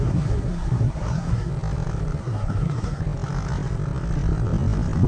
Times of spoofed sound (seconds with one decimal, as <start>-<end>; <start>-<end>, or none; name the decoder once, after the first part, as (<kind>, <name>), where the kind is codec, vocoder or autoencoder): 0.0-1.5 (codec, SNAC); 2.2-3.0